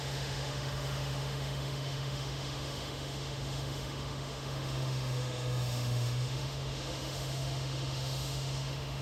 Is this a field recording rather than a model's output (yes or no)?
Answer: no